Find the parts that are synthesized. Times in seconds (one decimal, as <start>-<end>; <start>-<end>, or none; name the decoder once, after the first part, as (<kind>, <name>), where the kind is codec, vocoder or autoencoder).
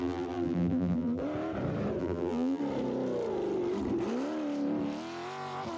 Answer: 0.0-1.2 (vocoder, BigVGAN v2); 2.0-2.6